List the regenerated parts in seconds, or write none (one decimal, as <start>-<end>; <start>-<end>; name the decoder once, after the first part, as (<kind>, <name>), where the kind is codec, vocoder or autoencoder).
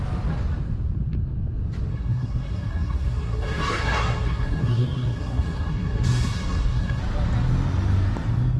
1.9-7.0 (codec, SNAC)